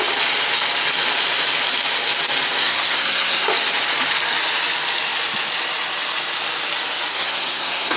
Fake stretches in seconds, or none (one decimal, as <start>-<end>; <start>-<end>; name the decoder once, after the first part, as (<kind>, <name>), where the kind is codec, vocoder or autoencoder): 2.6-3.5 (codec, SNAC); 7.1-8.0